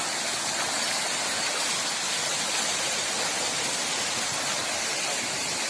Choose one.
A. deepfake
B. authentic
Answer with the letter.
B